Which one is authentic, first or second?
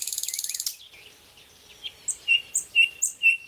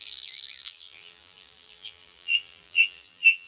first